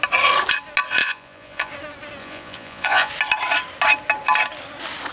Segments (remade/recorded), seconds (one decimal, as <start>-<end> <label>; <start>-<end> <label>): 0.0-1.0 recorded; 1.0-1.7 remade; 1.7-2.2 recorded; 2.2-3.1 remade; 3.1-5.1 recorded